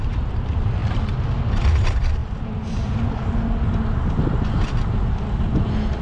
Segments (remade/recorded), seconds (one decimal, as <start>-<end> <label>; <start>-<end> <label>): 0.0-0.8 remade; 0.8-1.4 recorded; 1.4-2.2 remade; 2.2-4.2 recorded; 4.2-6.0 remade